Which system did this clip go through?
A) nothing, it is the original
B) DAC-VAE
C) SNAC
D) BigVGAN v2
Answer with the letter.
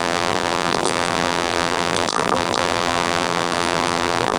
D